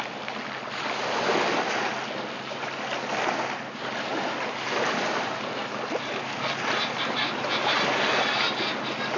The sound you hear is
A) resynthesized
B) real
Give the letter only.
B